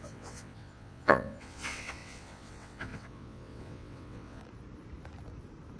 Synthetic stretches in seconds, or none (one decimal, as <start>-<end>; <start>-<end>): 0.0-4.4